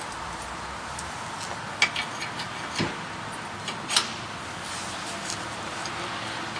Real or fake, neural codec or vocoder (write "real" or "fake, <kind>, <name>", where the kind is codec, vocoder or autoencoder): real